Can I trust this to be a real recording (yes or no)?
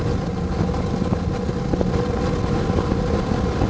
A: yes